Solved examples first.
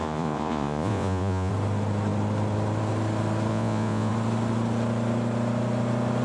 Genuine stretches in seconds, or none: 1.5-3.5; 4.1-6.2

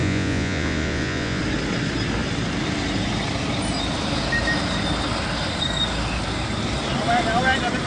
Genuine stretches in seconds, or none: 1.4-7.9

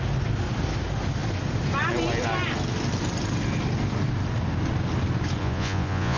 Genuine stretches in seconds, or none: 0.0-5.4

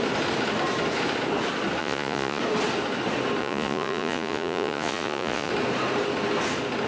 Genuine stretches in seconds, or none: 0.0-1.8; 2.4-3.4; 5.5-6.9

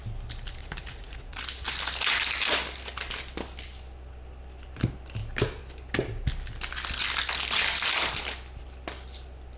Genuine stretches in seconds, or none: 0.0-0.6; 1.4-9.6

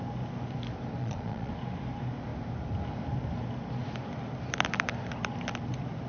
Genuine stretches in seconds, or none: 0.0-1.0; 1.5-6.1

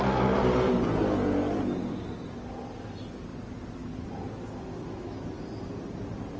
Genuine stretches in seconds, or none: 0.0-6.4